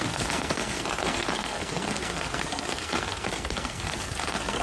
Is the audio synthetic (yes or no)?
yes